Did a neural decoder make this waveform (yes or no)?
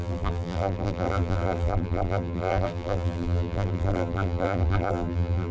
yes